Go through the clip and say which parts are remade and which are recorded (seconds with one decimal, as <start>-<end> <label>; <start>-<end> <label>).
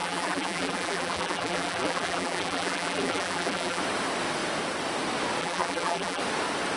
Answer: 0.0-3.8 remade; 3.8-5.4 recorded; 5.4-6.2 remade; 6.2-6.8 recorded